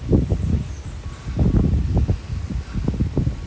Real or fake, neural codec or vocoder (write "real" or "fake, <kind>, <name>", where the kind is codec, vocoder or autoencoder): real